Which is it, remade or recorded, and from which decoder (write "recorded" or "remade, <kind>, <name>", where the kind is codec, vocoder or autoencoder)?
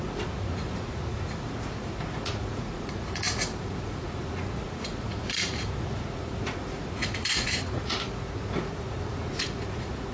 remade, vocoder, Vocos